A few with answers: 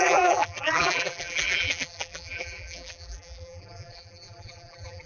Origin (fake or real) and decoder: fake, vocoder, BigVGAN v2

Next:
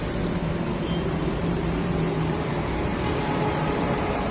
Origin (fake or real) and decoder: fake, vocoder, BigVGAN v2